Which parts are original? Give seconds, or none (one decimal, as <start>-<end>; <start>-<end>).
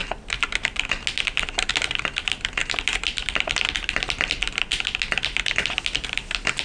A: 0.0-6.6